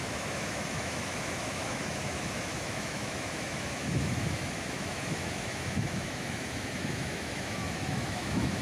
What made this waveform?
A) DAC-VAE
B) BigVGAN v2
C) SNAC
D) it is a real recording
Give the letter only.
A